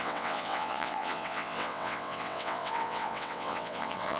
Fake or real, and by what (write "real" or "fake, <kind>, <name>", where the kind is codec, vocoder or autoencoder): fake, vocoder, WaveNeXt